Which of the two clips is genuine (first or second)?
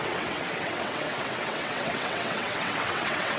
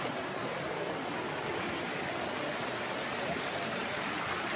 second